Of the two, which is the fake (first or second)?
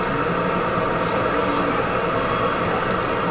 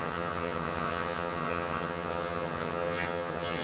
second